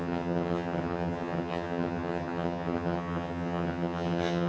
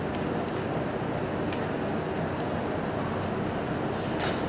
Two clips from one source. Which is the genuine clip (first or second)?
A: second